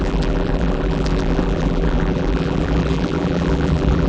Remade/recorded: remade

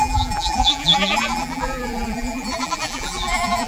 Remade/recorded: remade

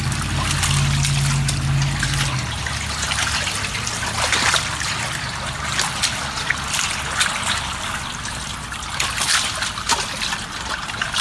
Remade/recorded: recorded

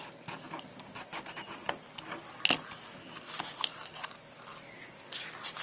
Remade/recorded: recorded